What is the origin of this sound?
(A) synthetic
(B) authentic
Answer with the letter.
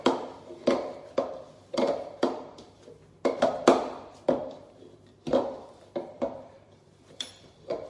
A